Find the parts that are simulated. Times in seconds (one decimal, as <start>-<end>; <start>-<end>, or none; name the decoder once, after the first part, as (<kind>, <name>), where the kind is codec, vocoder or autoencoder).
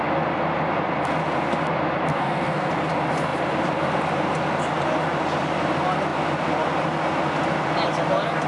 2.1-2.7 (codec, SNAC)